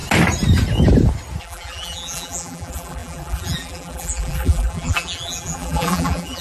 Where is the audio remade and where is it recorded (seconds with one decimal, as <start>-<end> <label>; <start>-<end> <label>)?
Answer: 0.0-1.4 recorded; 1.4-6.4 remade